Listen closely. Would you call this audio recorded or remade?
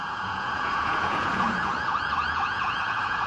remade